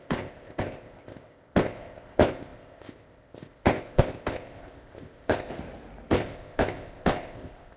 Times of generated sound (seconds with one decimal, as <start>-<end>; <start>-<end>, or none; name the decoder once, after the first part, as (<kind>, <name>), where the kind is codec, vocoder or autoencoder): 0.0-5.5 (codec, ZipCodec); 6.1-7.8